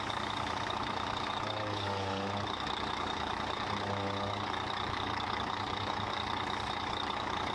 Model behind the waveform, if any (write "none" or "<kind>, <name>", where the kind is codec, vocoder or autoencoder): codec, DAC